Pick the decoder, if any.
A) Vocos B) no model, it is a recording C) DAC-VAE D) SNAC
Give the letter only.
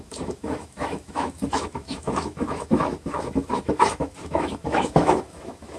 C